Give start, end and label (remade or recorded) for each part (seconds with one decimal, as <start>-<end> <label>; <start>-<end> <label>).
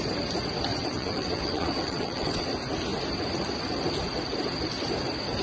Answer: 0.0-0.7 recorded; 0.7-2.5 remade; 2.5-5.4 recorded